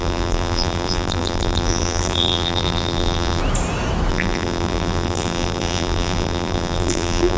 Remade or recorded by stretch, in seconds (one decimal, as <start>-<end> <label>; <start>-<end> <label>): 0.0-3.4 remade; 3.4-4.1 recorded; 4.1-7.4 remade